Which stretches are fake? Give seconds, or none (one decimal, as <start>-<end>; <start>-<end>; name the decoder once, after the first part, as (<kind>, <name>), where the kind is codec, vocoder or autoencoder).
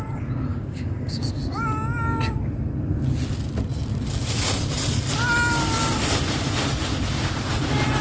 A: 0.5-1.3 (codec, DAC)